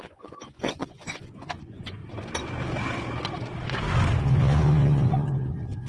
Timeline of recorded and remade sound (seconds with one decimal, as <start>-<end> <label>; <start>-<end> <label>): 0.0-2.0 remade; 2.0-4.2 recorded; 4.2-5.9 remade